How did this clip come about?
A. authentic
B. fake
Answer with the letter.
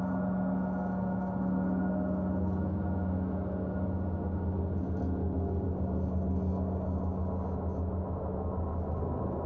A